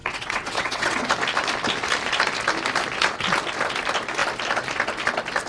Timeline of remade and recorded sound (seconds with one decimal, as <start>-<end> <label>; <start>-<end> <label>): 0.0-1.1 remade; 1.1-5.5 recorded

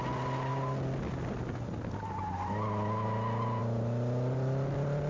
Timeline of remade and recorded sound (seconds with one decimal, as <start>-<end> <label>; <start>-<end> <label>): 0.0-5.1 recorded

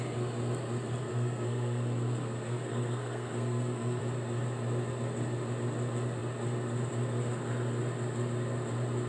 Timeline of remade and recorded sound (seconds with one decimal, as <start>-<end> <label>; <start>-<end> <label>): 0.0-1.1 recorded; 1.1-4.0 remade; 4.0-9.1 recorded

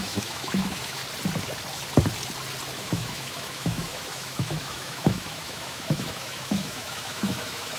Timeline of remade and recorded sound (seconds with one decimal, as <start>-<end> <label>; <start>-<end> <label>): 0.0-1.0 remade; 1.0-2.8 recorded; 2.8-7.8 remade

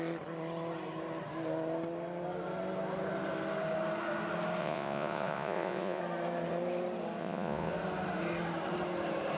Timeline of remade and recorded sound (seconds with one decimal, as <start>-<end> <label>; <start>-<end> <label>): 0.0-4.6 recorded; 4.6-6.0 remade; 6.0-7.2 recorded; 7.2-7.7 remade; 7.7-9.4 recorded